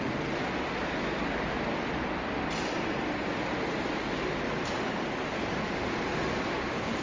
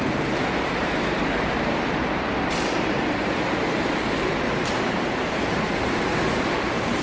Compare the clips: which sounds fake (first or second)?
second